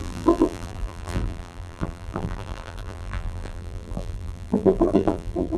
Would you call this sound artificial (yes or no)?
yes